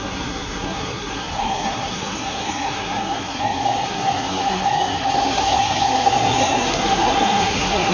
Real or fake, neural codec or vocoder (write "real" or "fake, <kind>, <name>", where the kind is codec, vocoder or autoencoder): fake, codec, SNAC